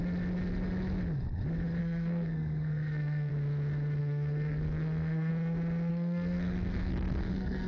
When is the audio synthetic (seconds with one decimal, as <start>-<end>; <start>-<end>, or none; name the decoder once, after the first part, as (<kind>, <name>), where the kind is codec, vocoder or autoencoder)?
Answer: 1.8-3.3 (codec, SNAC); 4.0-5.3; 5.9-7.7